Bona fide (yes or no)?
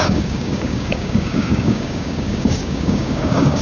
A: no